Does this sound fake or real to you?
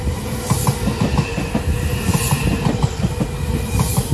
real